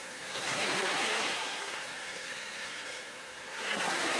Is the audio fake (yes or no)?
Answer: yes